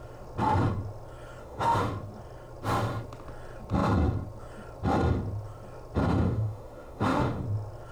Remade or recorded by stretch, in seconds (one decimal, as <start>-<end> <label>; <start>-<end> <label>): 0.0-1.4 recorded; 1.4-1.9 remade; 1.9-6.0 recorded; 6.0-7.4 remade; 7.4-7.9 recorded